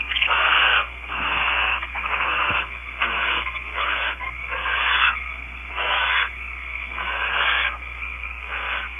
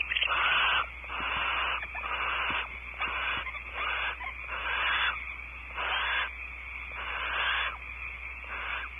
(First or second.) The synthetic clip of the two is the first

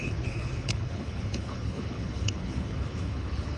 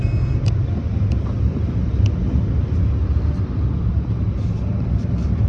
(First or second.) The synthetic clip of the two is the first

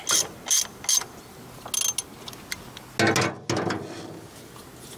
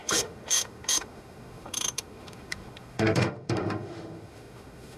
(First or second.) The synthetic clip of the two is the second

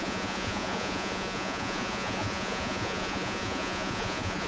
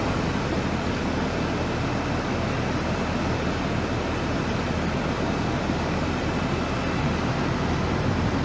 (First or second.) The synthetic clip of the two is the first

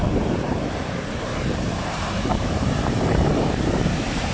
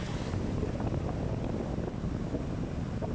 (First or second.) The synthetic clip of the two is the first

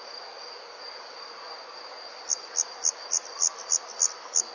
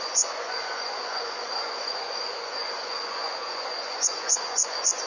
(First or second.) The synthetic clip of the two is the second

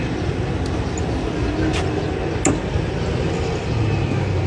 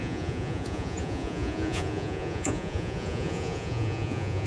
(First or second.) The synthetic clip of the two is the second